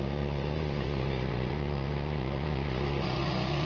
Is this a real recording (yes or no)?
no